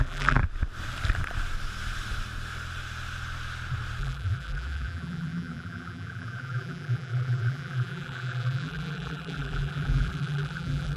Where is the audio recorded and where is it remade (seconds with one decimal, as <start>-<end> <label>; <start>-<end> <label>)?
0.0-0.4 remade; 0.4-4.0 recorded; 4.0-11.0 remade